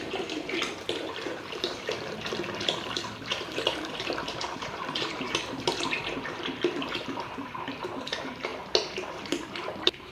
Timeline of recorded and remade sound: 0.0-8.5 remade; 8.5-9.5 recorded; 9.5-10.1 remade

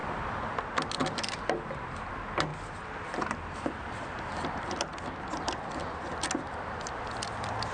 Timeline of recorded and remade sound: 0.0-0.6 remade; 0.6-1.0 recorded; 1.0-2.1 remade; 2.1-7.7 recorded

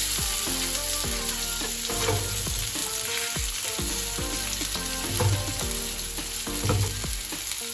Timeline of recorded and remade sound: 0.0-7.7 recorded

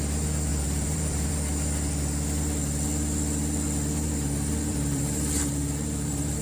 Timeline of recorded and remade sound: 0.0-0.5 recorded; 0.5-1.3 remade; 1.3-4.7 recorded; 4.7-6.4 remade

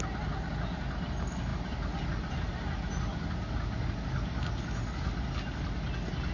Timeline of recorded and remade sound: 0.0-6.3 recorded

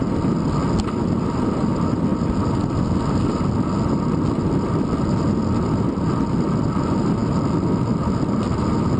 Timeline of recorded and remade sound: 0.0-9.0 recorded

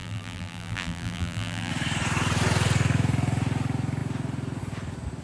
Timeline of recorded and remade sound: 0.0-1.7 remade; 1.7-5.2 recorded